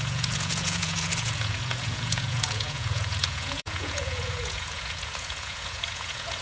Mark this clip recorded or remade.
remade